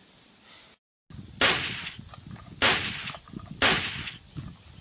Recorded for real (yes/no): yes